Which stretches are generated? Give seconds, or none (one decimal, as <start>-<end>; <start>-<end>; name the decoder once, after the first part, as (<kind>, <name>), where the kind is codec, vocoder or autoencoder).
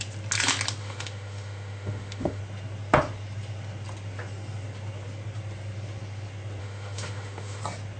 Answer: 0.8-2.4 (autoencoder, DAC-VAE); 6.6-7.6